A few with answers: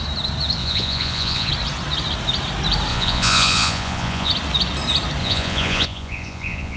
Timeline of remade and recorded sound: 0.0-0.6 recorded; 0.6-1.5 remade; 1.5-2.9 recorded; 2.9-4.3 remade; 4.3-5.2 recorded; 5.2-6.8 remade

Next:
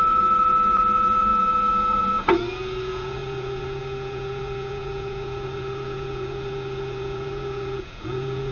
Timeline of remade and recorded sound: 0.0-8.5 remade

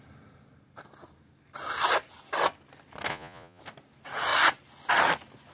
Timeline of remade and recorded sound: 0.0-3.1 recorded; 3.1-3.6 remade; 3.6-5.5 recorded

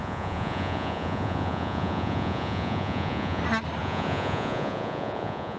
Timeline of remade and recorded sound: 0.0-3.4 remade; 3.4-3.8 recorded; 3.8-5.6 remade

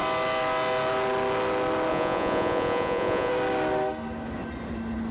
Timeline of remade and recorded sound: 0.0-1.9 recorded; 1.9-3.3 remade; 3.3-5.1 recorded

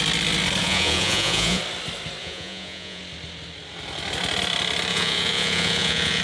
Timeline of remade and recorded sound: 0.0-0.6 recorded; 0.6-1.6 remade; 1.6-2.2 recorded; 2.2-3.0 remade; 3.0-4.9 recorded; 4.9-6.2 remade